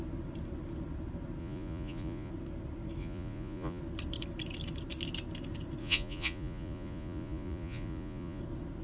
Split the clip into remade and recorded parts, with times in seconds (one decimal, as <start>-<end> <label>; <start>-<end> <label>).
0.0-1.4 recorded; 1.4-2.3 remade; 2.3-3.0 recorded; 3.0-3.8 remade; 3.8-5.8 recorded; 5.8-8.4 remade; 8.4-8.8 recorded